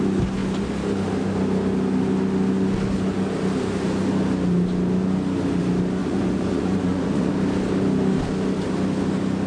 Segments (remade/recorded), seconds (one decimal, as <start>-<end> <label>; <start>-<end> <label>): 0.0-6.0 recorded; 6.0-7.3 remade; 7.3-9.5 recorded